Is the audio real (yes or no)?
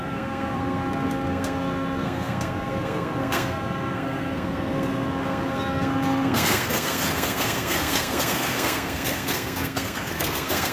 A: no